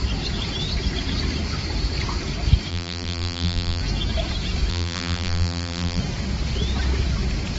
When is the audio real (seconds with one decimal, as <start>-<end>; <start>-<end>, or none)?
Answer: 0.0-2.7; 3.8-4.7; 6.0-7.6